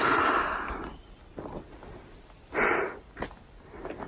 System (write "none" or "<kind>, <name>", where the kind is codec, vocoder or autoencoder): none